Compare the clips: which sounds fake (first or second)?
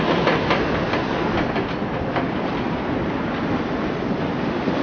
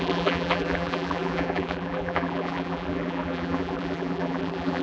second